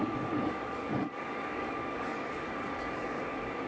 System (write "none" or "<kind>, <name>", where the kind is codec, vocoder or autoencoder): codec, DAC